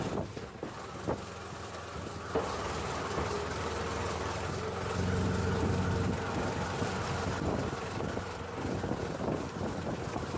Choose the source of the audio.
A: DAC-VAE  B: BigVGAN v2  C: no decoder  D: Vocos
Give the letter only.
C